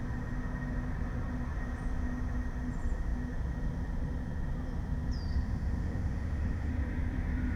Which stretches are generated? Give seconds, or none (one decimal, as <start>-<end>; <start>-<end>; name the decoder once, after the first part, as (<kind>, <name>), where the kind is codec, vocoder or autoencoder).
5.3-6.7 (autoencoder, DAC-VAE)